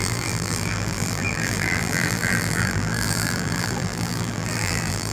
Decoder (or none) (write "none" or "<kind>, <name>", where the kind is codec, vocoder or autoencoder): vocoder, BigVGAN v2